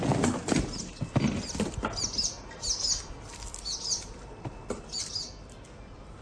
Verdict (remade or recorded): recorded